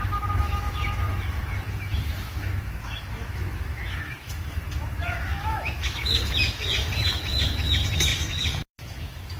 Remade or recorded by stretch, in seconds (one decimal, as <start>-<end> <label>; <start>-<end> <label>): 0.0-9.4 remade